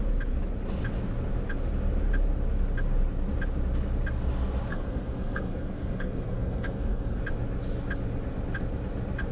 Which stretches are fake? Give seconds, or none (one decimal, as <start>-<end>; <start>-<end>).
4.7-7.2